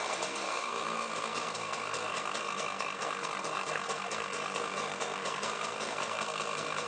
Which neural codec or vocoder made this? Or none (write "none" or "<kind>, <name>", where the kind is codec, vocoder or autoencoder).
codec, SNAC